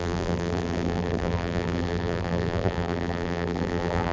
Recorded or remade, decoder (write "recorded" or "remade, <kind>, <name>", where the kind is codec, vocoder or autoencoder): remade, vocoder, BigVGAN v2